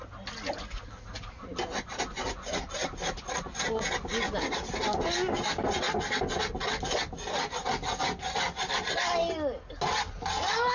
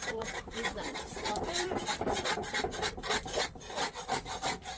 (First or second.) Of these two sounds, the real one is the first